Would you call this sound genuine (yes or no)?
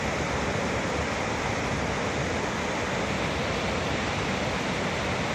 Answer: yes